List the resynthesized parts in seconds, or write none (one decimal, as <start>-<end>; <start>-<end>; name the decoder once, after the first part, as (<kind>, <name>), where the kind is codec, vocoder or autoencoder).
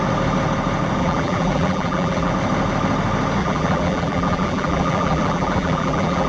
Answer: 1.0-2.3 (vocoder, BigVGAN v2); 3.4-6.3